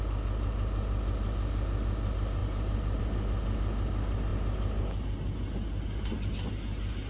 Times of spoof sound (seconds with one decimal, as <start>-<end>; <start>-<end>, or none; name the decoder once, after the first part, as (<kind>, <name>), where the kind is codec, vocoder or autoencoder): 2.4-3.0 (vocoder, BigVGAN v2)